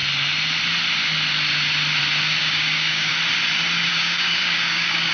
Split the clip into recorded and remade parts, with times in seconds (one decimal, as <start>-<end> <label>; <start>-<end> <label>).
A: 0.0-2.4 recorded; 2.4-3.1 remade; 3.1-3.9 recorded; 3.9-5.1 remade